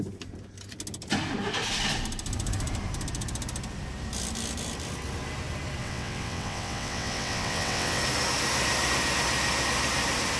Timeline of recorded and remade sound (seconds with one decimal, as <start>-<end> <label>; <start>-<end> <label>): 0.0-5.8 recorded; 5.8-8.0 remade; 8.0-10.4 recorded